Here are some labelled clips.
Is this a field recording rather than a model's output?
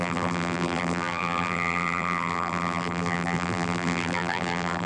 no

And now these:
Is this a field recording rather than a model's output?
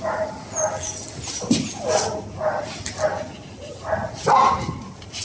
yes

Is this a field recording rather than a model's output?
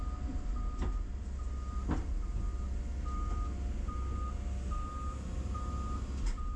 yes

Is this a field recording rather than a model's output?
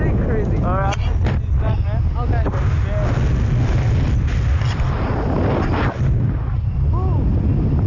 yes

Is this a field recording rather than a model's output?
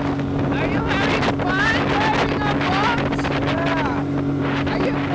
yes